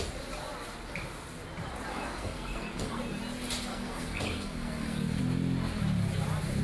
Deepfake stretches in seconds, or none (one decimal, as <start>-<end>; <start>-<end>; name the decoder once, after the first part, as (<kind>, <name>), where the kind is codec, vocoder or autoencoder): 1.9-3.0 (codec, SNAC); 3.7-5.2